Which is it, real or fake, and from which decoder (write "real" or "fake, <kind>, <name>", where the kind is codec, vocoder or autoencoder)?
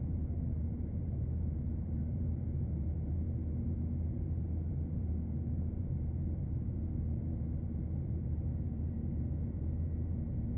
fake, vocoder, BigVGAN v2